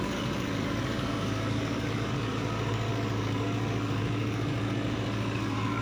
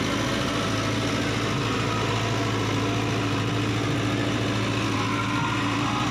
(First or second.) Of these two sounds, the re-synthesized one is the first